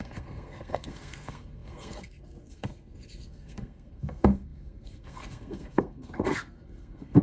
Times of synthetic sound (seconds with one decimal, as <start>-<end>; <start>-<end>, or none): 0.0-7.2